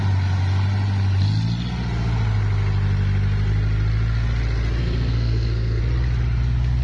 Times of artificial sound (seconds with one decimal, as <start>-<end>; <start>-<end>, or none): 4.8-5.8

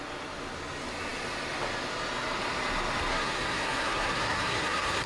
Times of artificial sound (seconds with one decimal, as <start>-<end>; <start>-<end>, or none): 3.1-5.1

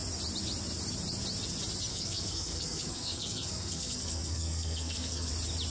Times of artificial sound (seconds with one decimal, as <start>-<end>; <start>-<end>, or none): 1.9-5.3

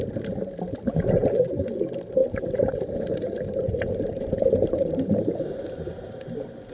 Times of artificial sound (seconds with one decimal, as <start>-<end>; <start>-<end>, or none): 1.2-1.7; 2.2-6.2

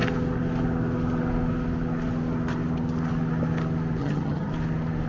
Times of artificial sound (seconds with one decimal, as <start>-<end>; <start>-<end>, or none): 4.0-4.5

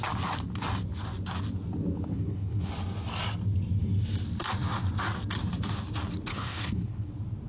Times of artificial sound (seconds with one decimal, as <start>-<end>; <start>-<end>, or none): 2.1-2.7; 6.3-7.1

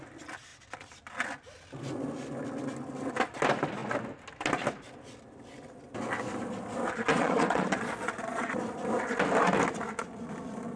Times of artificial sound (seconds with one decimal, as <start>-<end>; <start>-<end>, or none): 7.1-8.6